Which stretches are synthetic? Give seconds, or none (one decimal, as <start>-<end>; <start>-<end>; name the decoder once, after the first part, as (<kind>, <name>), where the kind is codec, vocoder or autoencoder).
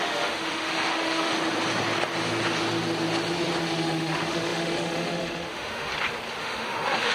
0.0-1.3 (autoencoder, DAC-VAE); 3.6-5.9; 6.4-7.1